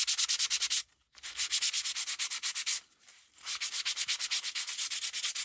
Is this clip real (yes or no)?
yes